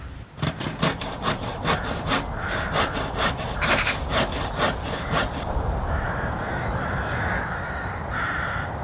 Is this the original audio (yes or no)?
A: no